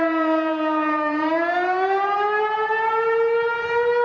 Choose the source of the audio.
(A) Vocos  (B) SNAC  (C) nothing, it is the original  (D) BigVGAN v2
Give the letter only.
D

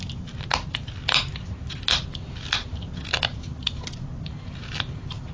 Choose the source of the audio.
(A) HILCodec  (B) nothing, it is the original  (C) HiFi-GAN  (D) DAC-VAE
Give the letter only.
B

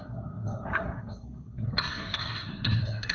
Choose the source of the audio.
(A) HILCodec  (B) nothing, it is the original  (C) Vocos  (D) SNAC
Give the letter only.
D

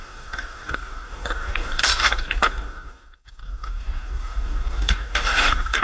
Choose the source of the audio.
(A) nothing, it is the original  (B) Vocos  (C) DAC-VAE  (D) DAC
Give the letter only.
D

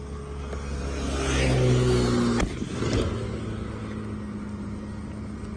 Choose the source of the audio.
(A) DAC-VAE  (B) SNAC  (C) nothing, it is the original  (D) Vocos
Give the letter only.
C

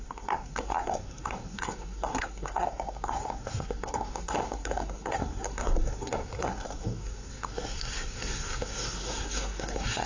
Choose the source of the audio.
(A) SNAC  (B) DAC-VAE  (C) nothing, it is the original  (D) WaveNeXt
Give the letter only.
A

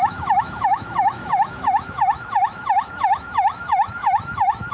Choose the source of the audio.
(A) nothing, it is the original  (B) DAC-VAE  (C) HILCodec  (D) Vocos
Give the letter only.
B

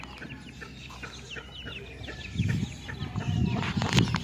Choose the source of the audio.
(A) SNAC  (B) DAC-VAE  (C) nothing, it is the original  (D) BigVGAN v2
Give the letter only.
C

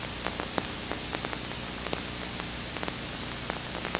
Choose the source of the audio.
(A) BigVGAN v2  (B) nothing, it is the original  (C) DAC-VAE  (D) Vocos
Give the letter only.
B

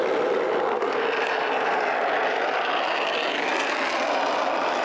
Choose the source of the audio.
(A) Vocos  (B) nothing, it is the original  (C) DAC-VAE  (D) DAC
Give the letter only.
B